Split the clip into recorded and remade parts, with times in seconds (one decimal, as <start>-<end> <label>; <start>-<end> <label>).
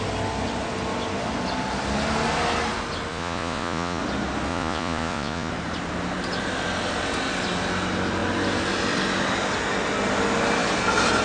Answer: 0.0-3.1 recorded; 3.1-4.0 remade; 4.0-4.5 recorded; 4.5-5.5 remade; 5.5-11.2 recorded